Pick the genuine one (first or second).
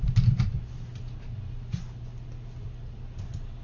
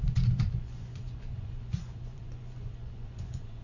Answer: first